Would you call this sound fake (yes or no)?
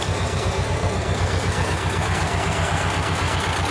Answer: yes